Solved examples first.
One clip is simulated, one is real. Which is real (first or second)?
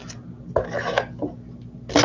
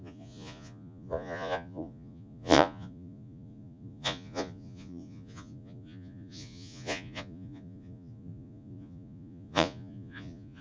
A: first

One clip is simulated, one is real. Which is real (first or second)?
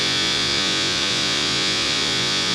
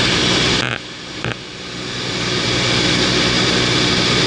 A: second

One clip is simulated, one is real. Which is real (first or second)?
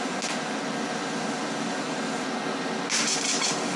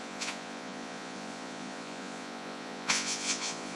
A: first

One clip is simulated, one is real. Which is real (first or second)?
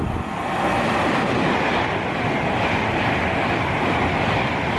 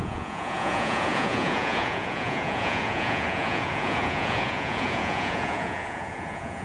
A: first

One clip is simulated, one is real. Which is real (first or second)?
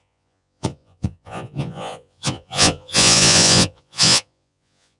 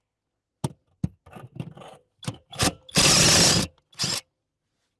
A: second